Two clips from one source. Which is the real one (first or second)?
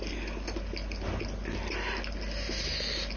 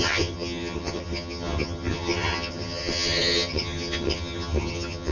first